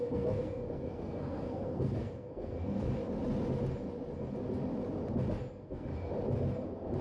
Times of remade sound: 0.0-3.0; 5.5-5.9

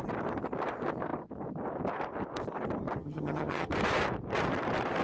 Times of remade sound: 3.0-3.7

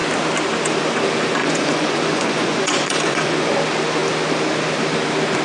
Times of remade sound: 1.4-3.5

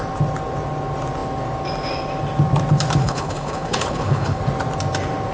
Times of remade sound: 3.0-4.4

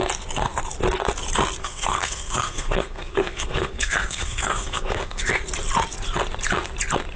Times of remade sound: 1.6-5.2

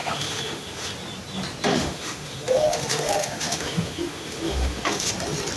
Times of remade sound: 0.0-0.9; 1.7-5.1